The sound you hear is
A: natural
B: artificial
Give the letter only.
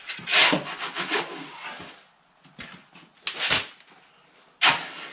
A